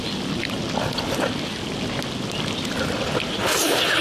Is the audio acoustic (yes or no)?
yes